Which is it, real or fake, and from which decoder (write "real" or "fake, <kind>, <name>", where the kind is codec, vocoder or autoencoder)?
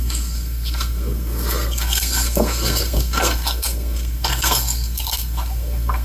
fake, codec, SNAC